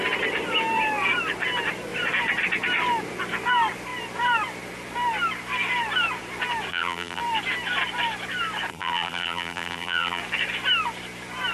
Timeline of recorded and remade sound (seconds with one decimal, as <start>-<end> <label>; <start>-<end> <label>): 0.0-6.7 recorded; 6.7-7.2 remade; 7.2-8.7 recorded; 8.7-10.2 remade; 10.2-11.5 recorded